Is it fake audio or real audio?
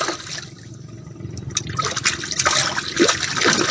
real